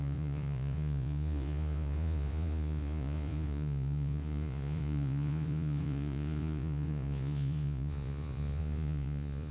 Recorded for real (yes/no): no